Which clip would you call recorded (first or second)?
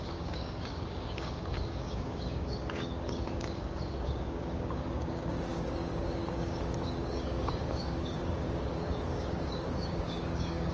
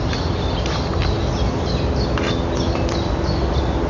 second